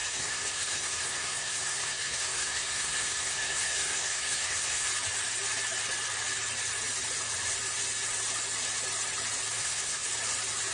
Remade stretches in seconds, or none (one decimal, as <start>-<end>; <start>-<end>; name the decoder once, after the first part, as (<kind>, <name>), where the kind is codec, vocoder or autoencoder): 0.0-4.9 (codec, SNAC); 9.6-10.1